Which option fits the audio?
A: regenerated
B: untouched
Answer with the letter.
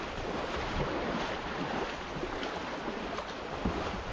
A